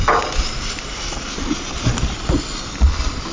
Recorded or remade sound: recorded